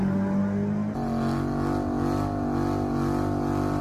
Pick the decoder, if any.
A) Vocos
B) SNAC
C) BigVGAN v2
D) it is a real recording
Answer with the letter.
D